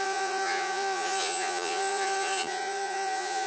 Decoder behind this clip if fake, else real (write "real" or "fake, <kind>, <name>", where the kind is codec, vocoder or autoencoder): fake, vocoder, Vocos